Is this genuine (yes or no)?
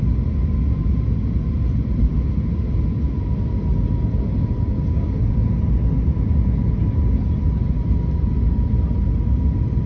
yes